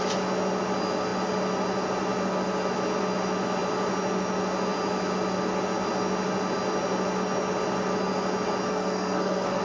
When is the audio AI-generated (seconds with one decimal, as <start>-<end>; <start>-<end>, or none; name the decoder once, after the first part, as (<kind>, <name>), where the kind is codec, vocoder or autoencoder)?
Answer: 8.7-9.6 (codec, SNAC)